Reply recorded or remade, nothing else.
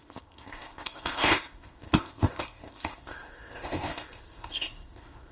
remade